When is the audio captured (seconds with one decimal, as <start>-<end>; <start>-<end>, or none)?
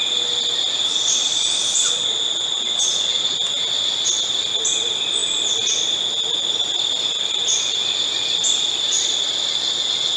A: 0.0-1.8; 3.4-10.2